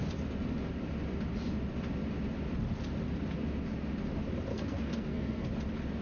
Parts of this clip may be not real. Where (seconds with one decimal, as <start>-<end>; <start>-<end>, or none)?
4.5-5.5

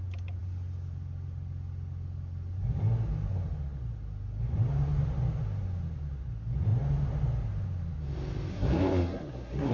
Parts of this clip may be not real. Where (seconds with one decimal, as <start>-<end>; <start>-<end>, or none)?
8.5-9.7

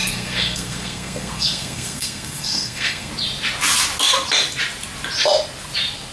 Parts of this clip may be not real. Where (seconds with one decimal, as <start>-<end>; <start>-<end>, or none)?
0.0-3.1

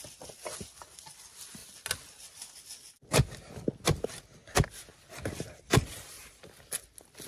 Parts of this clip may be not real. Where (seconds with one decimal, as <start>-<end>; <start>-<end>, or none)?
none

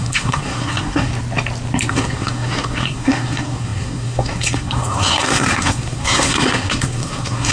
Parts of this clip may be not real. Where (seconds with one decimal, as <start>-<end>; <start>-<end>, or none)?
0.0-1.1; 1.9-7.5

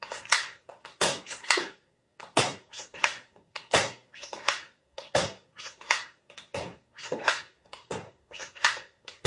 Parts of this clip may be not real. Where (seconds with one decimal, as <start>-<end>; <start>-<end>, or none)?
0.0-9.3

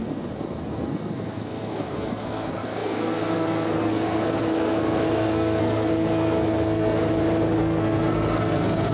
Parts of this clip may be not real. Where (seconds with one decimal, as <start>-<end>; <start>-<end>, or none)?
0.0-7.0; 7.6-8.9